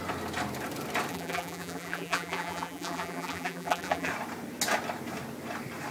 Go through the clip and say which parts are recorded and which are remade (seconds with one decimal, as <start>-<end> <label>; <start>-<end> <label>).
0.0-1.1 recorded; 1.1-4.1 remade; 4.1-5.9 recorded